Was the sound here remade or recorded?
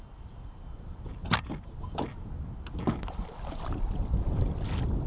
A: recorded